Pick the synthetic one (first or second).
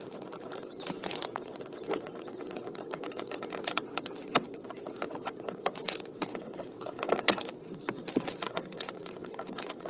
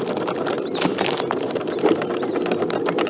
first